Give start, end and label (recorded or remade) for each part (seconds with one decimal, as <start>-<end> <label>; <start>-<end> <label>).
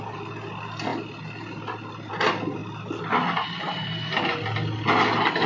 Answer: 0.0-5.5 recorded